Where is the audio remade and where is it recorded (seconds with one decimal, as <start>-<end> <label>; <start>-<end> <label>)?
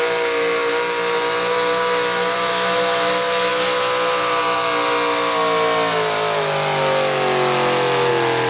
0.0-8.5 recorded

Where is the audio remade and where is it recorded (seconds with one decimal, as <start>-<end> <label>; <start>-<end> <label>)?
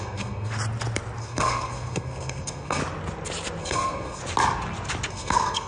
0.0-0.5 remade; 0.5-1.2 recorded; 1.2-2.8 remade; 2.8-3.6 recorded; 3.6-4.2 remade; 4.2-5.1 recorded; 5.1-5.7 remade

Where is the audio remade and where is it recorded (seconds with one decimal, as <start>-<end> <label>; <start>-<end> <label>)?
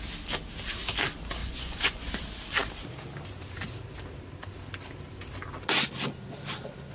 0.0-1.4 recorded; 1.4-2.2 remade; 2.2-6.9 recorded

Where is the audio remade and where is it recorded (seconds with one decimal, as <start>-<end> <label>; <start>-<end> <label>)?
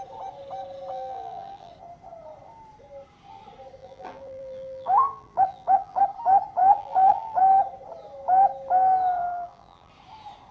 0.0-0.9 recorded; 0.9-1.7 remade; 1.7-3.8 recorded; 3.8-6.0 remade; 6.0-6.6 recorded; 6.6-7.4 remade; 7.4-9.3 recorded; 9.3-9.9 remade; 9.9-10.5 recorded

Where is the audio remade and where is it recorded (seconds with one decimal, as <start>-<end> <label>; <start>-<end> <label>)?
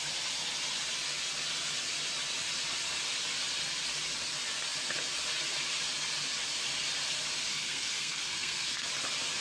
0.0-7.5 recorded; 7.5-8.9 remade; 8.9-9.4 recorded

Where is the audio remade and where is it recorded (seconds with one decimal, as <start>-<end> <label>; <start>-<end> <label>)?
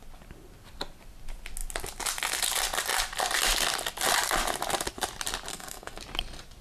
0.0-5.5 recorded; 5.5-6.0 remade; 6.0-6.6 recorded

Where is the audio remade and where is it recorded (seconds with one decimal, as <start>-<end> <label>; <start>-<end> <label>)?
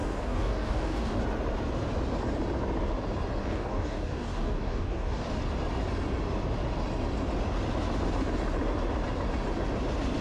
0.0-1.2 remade; 1.2-3.4 recorded; 3.4-5.4 remade; 5.4-10.2 recorded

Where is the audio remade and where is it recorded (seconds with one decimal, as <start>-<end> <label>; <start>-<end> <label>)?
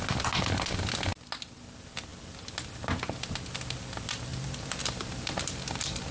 0.0-4.3 recorded; 4.3-6.1 remade